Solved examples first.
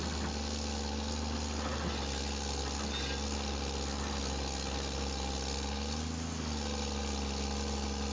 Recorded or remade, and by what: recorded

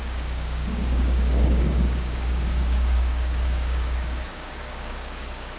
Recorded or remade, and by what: remade, codec, DAC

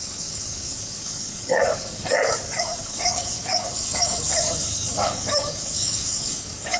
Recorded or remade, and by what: remade, codec, DAC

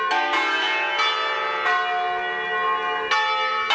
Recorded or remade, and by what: recorded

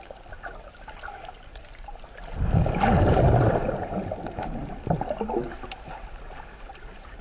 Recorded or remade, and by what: recorded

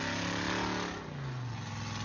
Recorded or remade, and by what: recorded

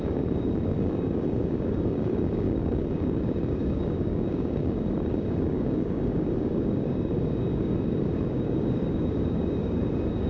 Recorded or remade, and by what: remade, codec, DAC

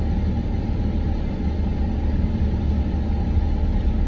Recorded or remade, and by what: recorded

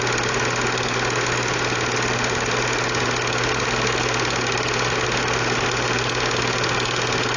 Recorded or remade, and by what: recorded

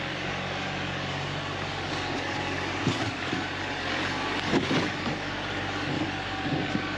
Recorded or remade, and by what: remade, codec, DAC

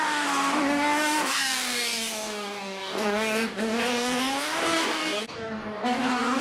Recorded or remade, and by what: remade, codec, DAC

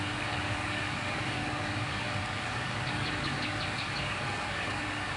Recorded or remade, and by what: remade, codec, DAC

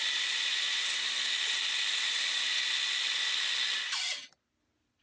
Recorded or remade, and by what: recorded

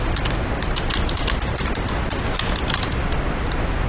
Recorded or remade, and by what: recorded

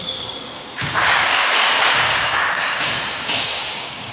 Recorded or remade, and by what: remade, codec, DAC